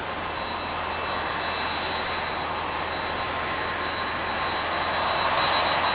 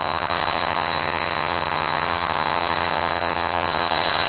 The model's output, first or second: second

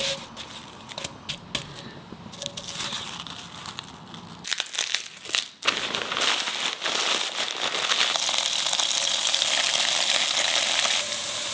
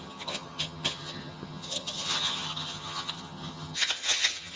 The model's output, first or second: second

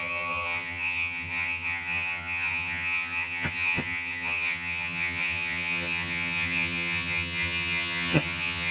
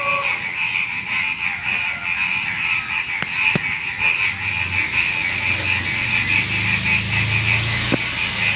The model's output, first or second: first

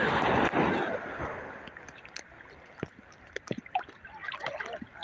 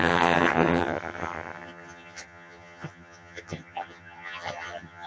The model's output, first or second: second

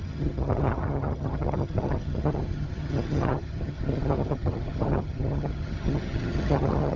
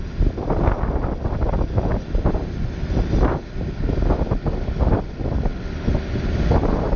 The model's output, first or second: first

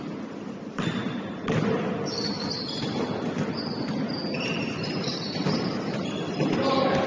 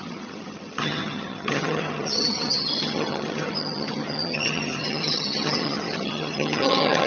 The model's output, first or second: second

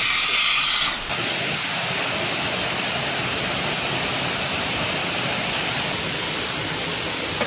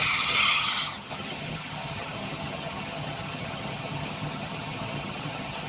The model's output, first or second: second